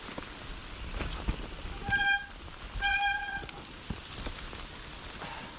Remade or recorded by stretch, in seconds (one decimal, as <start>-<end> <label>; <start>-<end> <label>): 0.0-2.9 recorded; 2.9-3.8 remade; 3.8-5.6 recorded